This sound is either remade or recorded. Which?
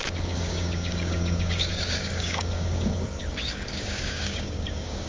remade